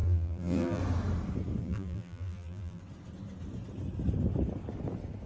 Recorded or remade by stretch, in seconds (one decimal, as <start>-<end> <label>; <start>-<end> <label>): 0.0-0.8 remade; 0.8-1.6 recorded; 1.6-2.8 remade; 2.8-5.3 recorded